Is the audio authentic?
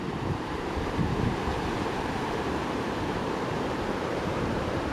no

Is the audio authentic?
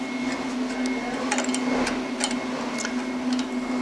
yes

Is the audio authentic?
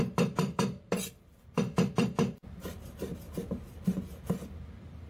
no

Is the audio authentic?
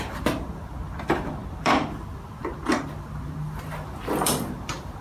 no